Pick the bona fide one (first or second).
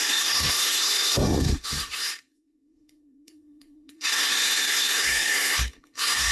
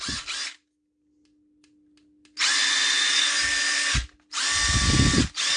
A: second